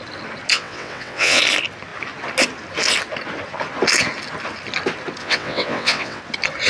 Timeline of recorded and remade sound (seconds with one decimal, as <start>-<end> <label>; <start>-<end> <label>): 0.0-0.5 recorded; 0.5-1.4 remade; 1.4-5.2 recorded; 5.2-6.2 remade; 6.2-6.7 recorded